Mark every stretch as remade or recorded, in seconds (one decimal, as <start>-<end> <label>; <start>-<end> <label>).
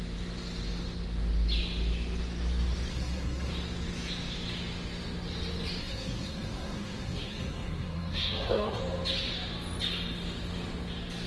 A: 0.0-2.9 recorded; 2.9-3.5 remade; 3.5-5.8 recorded; 5.8-8.8 remade; 8.8-11.3 recorded